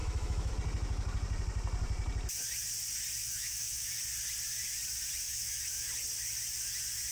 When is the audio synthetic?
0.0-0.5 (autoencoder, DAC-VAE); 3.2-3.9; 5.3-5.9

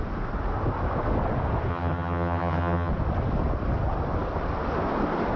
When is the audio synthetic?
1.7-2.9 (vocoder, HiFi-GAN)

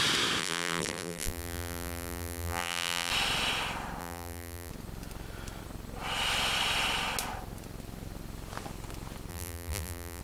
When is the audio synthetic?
0.4-3.1 (vocoder, BigVGAN v2); 4.0-4.7; 9.3-10.2